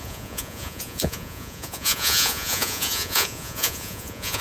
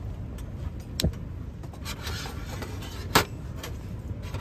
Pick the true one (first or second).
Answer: second